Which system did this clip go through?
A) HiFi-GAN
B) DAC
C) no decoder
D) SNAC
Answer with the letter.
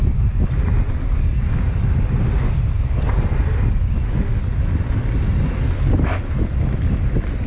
C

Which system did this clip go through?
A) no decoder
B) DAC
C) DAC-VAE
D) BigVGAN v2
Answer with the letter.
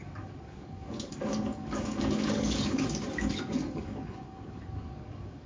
B